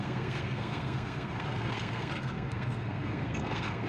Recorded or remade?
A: remade